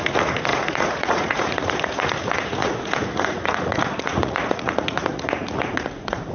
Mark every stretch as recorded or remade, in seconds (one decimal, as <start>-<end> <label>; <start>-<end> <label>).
0.0-6.3 remade